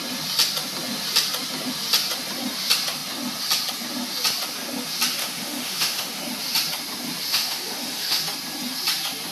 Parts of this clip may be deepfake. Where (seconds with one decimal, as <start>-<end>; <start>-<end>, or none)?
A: 5.2-6.2; 7.3-8.2